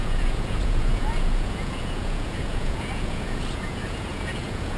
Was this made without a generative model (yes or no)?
no